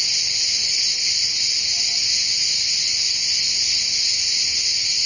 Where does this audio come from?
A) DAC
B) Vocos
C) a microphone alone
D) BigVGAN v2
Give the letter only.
C